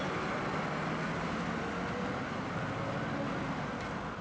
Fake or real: real